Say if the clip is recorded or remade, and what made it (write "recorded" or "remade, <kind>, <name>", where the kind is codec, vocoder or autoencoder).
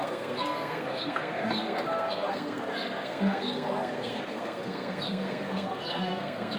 remade, codec, SNAC